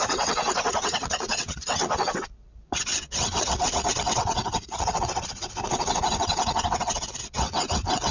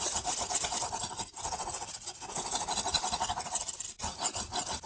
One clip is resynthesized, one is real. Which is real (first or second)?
second